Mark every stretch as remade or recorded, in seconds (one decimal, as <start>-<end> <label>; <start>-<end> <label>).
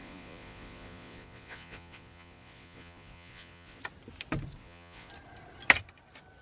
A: 0.0-3.8 remade; 3.8-4.6 recorded; 4.6-5.1 remade; 5.1-6.4 recorded